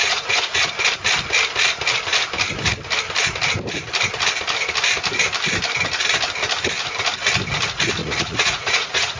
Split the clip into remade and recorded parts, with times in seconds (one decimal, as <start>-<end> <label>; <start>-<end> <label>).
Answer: 0.0-0.7 remade; 0.7-8.0 recorded; 8.0-9.2 remade